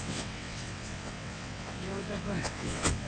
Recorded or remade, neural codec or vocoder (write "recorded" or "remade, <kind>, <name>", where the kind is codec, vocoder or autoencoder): remade, vocoder, WaveNeXt